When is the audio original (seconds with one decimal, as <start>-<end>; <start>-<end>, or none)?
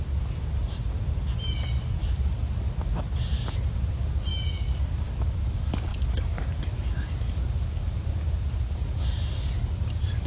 0.0-10.3